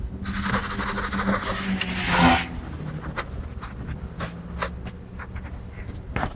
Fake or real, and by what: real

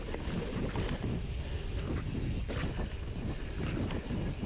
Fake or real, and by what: real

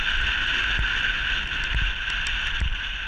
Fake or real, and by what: real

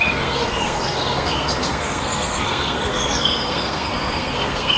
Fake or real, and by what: fake, codec, SNAC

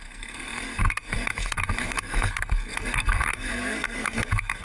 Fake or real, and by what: fake, codec, SNAC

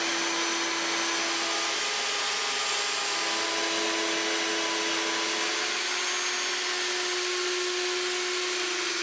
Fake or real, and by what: real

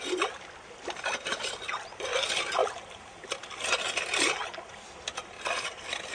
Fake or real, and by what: real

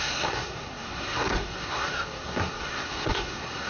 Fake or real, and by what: fake, codec, SNAC